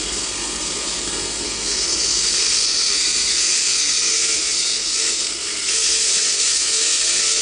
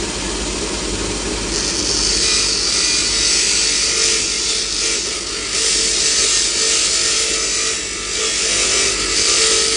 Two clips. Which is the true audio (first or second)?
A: second